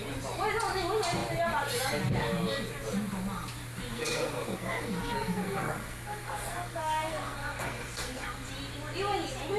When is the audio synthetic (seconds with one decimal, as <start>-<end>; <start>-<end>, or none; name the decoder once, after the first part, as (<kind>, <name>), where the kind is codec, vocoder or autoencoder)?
3.9-8.5 (codec, SNAC)